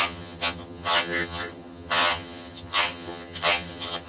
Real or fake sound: fake